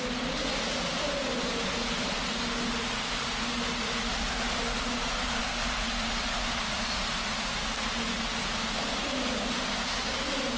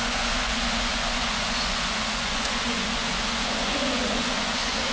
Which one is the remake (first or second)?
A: second